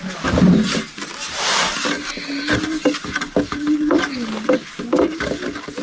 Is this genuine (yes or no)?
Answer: yes